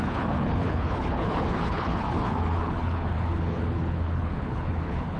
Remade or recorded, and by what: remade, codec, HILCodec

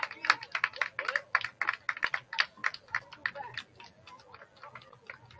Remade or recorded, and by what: recorded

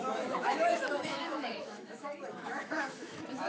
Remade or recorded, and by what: remade, autoencoder, DAC-VAE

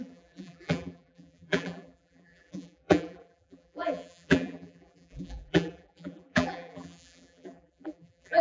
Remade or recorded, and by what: remade, vocoder, BigVGAN v2